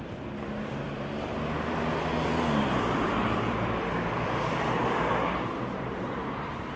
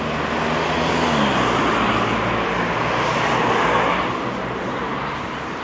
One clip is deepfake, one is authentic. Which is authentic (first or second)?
second